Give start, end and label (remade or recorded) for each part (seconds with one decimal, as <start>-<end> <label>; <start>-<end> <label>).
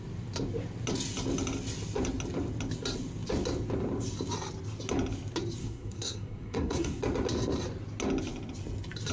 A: 0.0-5.6 recorded; 5.6-7.0 remade; 7.0-9.1 recorded